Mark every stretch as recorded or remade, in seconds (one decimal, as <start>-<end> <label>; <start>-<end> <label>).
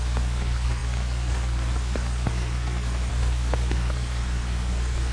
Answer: 0.0-5.1 remade